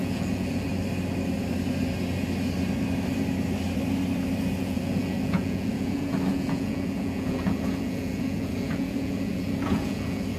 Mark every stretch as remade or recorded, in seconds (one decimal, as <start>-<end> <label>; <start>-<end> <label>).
0.0-0.7 remade; 0.7-4.6 recorded; 4.6-10.4 remade